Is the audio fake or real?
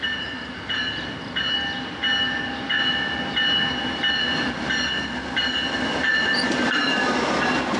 real